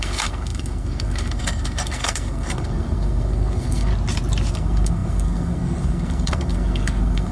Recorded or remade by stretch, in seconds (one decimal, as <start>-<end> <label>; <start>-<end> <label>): 0.0-3.9 remade; 3.9-4.5 recorded; 4.5-7.3 remade